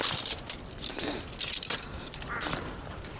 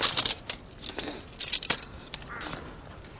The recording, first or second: second